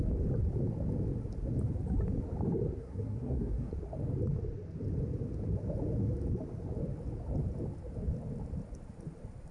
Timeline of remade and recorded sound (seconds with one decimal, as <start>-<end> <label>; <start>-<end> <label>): 0.0-2.8 recorded; 2.8-3.7 remade; 3.7-9.5 recorded